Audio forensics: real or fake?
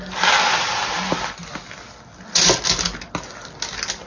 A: real